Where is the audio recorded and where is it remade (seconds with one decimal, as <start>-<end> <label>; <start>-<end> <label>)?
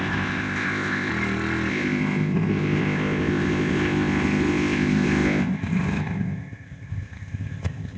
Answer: 0.0-1.1 remade; 1.1-1.7 recorded; 1.7-8.0 remade